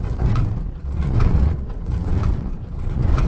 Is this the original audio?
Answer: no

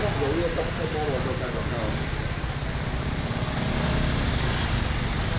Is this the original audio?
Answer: yes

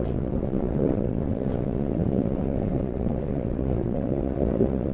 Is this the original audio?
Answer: no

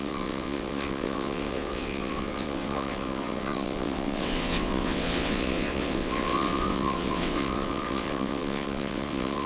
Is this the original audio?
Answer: no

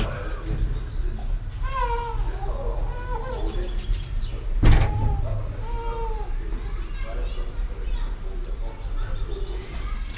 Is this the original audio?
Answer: yes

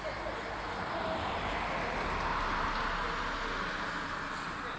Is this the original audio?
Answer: yes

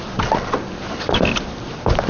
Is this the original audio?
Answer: yes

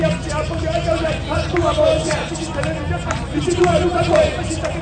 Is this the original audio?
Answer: yes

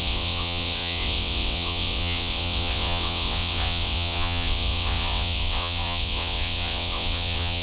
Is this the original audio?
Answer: no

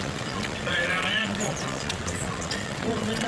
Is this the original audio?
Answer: no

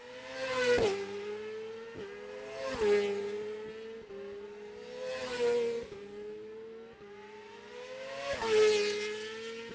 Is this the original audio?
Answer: yes